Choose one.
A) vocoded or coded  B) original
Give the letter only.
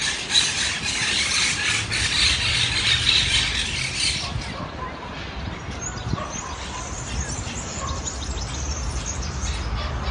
B